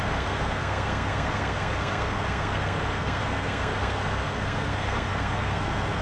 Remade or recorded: remade